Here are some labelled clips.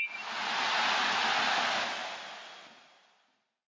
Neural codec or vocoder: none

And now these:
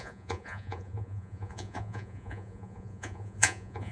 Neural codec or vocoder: vocoder, Vocos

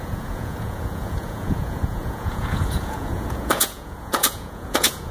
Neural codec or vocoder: vocoder, Vocos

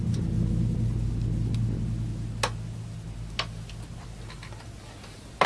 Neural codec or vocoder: none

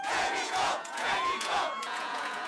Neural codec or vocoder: vocoder, Vocos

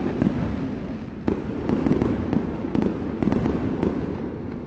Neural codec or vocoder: none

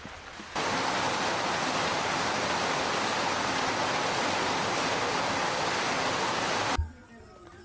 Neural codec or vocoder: none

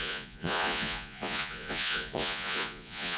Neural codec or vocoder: vocoder, Vocos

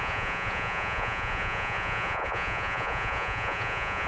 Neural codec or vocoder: vocoder, Vocos